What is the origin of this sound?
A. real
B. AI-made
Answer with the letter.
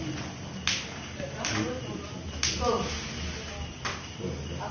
A